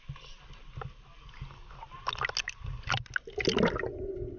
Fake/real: real